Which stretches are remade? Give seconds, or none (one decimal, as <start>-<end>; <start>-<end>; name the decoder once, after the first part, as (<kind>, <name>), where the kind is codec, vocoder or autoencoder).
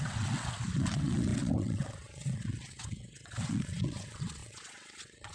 0.0-5.3 (vocoder, WaveNeXt)